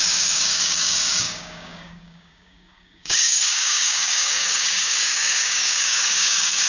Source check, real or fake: fake